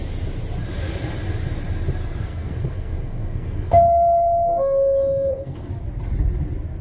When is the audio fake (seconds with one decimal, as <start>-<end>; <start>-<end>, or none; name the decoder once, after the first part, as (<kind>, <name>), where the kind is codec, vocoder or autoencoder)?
2.0-5.7 (codec, SNAC)